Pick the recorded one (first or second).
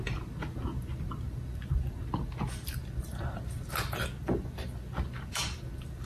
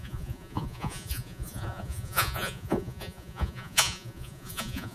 first